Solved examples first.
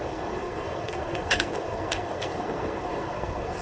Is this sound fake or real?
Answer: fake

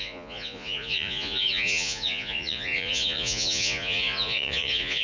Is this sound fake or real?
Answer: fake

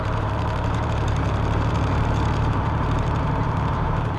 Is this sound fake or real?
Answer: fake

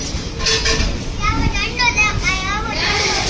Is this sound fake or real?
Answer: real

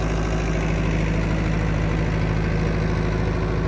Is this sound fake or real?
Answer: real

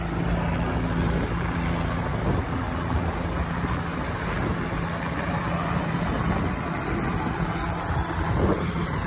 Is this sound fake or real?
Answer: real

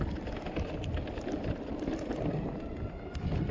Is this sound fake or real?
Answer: real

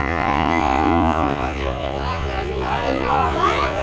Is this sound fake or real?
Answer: fake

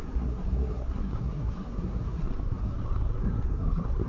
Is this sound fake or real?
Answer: fake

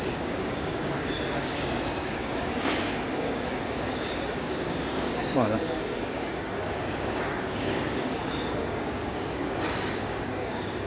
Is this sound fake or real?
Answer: fake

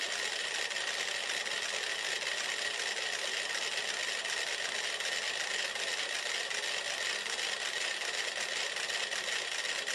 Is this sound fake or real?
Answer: real